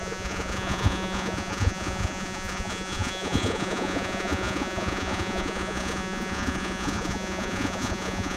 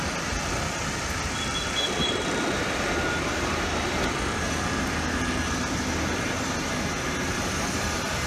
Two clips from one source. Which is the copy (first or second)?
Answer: first